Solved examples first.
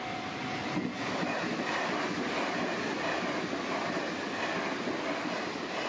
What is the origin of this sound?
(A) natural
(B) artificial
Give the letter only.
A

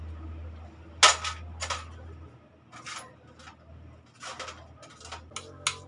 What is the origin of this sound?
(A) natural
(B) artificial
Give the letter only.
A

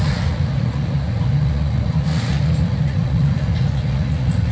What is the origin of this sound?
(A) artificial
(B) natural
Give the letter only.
A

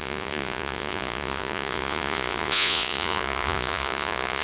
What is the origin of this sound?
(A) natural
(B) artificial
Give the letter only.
B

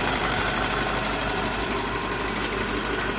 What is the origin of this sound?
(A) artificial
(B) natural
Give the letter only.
B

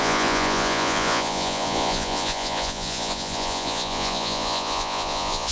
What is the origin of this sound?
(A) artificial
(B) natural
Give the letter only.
A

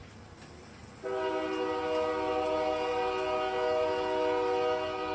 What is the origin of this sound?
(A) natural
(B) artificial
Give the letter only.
A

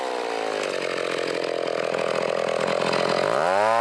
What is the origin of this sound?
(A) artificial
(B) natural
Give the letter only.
B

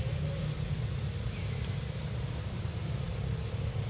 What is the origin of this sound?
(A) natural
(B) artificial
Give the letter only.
A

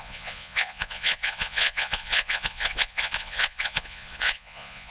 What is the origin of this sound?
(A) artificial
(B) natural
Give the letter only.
A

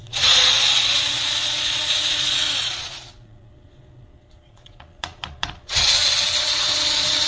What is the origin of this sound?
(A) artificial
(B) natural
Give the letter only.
A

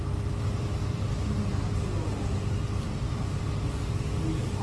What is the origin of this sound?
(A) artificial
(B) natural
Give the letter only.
B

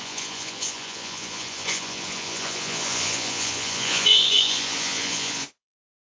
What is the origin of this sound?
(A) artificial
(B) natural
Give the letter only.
A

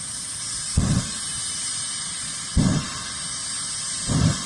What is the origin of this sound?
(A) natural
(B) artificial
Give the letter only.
A